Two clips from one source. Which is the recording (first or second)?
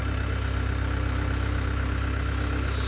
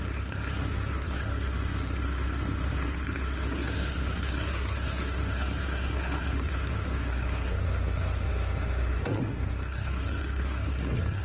first